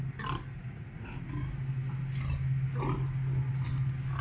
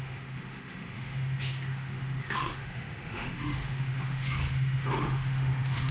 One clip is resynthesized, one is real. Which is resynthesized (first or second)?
second